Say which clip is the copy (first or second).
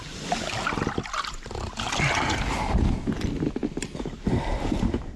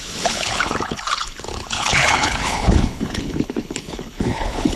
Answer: second